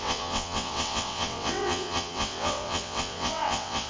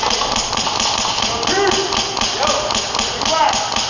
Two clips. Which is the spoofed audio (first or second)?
first